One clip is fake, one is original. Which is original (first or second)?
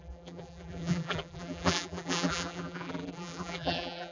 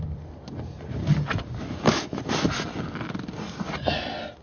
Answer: second